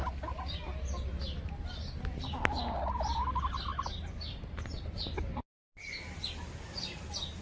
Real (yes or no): yes